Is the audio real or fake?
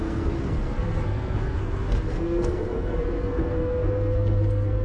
fake